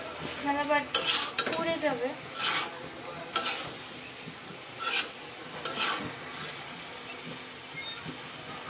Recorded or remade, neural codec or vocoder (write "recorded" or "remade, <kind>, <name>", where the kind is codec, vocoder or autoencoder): recorded